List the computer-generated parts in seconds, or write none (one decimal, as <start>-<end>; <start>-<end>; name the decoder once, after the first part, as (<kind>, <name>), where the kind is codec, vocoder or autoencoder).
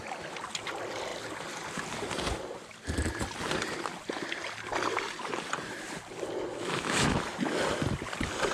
6.5-7.2 (autoencoder, DAC-VAE)